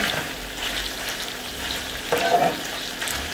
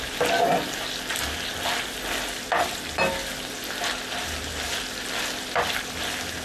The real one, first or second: second